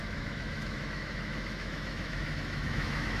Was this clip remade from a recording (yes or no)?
yes